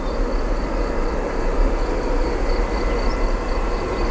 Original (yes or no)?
yes